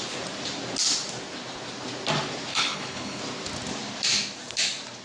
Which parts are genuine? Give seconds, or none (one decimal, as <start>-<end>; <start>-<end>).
0.0-2.5; 3.2-5.0